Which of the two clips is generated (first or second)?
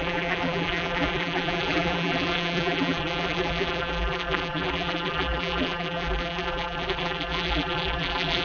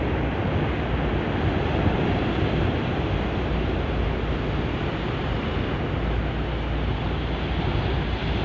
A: first